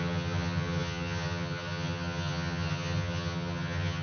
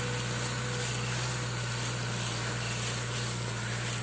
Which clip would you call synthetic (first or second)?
first